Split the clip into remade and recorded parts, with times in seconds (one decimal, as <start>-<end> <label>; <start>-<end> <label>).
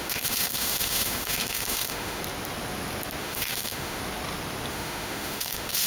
0.0-2.2 remade; 2.2-3.2 recorded; 3.2-4.0 remade; 4.0-4.7 recorded; 4.7-5.9 remade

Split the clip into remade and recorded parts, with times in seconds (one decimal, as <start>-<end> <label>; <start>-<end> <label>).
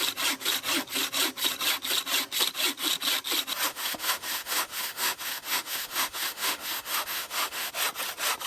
0.0-3.7 recorded; 3.7-7.7 remade; 7.7-8.5 recorded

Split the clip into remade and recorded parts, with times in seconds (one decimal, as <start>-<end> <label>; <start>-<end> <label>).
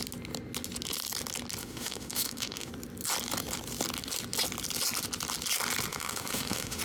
0.0-1.6 recorded; 1.6-2.7 remade; 2.7-5.9 recorded; 5.9-6.8 remade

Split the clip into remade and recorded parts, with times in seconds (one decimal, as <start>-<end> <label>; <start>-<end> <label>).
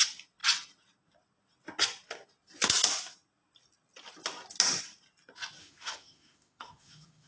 0.0-5.6 recorded; 5.6-7.3 remade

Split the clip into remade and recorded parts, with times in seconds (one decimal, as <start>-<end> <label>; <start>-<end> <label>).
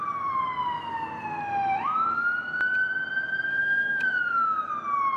0.0-3.6 recorded; 3.6-4.7 remade; 4.7-5.2 recorded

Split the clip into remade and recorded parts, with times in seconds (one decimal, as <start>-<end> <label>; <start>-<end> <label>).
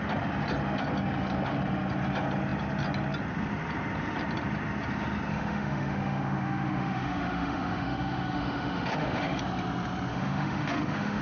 0.0-5.3 recorded; 5.3-9.4 remade; 9.4-10.1 recorded; 10.1-11.2 remade